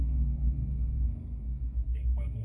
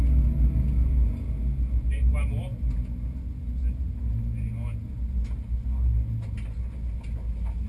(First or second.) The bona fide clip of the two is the second